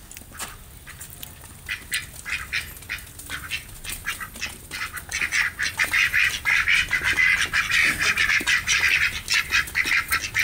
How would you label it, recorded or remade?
recorded